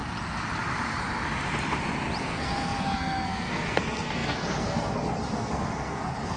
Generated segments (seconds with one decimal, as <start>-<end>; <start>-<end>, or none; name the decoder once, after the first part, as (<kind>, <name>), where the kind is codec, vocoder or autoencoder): 2.2-6.4 (codec, SNAC)